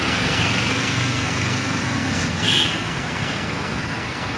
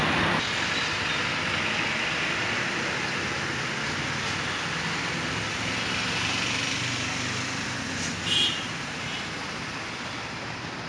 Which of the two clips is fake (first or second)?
first